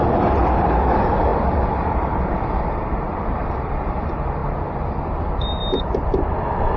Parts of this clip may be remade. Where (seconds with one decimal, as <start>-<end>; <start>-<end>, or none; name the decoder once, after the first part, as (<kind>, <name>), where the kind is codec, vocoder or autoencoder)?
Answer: 0.0-5.6 (vocoder, BigVGAN v2); 6.3-6.8